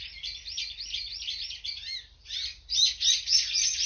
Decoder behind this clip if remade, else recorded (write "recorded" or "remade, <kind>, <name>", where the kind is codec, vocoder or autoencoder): recorded